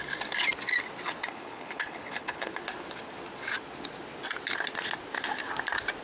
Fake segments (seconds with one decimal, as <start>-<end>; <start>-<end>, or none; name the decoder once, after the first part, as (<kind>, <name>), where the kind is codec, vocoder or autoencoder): 1.3-2.5 (codec, HILCodec)

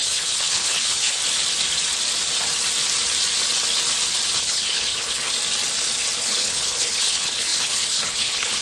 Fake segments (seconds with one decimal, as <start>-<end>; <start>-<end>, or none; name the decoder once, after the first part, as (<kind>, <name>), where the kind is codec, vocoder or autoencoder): 0.0-1.2 (codec, HILCodec); 4.4-5.3; 6.2-8.6

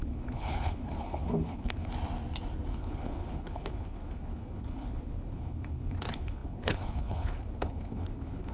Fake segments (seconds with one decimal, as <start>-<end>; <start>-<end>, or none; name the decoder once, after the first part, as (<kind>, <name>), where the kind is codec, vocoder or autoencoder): 0.0-1.9 (codec, HILCodec); 2.7-8.5

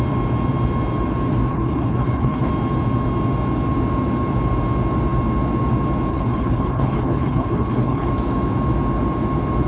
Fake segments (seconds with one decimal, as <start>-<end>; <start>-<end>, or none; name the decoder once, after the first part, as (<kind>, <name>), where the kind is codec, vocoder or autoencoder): 1.5-2.5 (codec, HILCodec); 6.1-8.1

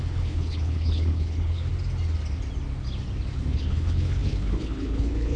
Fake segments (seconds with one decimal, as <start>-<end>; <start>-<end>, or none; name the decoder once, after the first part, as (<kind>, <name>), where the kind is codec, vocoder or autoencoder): 0.0-1.7 (codec, HILCodec); 3.4-5.4

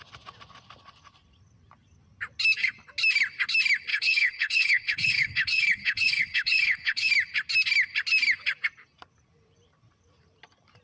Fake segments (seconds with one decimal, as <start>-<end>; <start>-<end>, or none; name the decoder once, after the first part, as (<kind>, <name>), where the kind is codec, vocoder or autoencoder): 3.9-7.1 (codec, HILCodec)

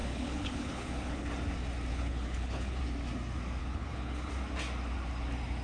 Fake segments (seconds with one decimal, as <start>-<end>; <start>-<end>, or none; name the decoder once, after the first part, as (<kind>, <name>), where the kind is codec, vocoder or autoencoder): 0.0-1.3 (codec, HILCodec); 1.9-2.8; 3.6-4.3

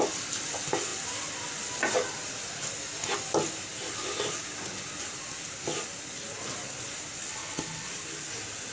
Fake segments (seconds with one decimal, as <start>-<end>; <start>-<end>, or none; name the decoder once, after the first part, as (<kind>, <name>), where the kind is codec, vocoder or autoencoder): 7.3-7.9 (codec, HILCodec)